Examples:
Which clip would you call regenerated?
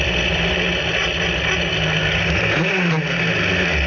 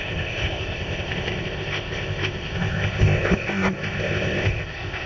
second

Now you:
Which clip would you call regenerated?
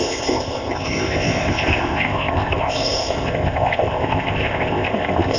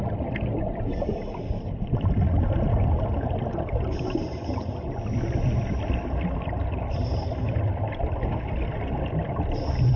first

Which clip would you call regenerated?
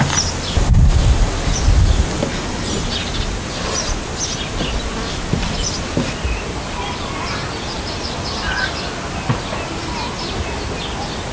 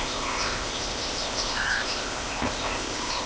second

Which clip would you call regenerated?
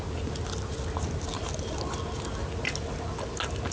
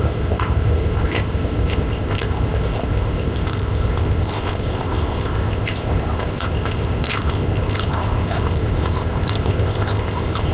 second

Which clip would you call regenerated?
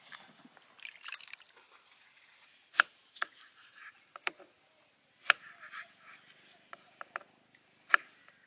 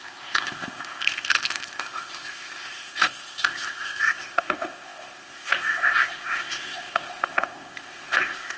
second